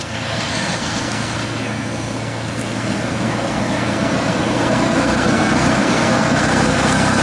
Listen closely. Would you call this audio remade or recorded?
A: remade